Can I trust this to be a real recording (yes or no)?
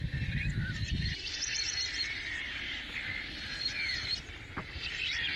yes